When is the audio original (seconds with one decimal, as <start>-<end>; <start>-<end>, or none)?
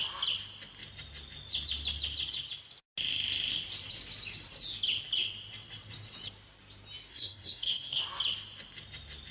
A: 0.0-7.1; 8.0-9.3